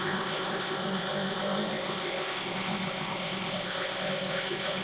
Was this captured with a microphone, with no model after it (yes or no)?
no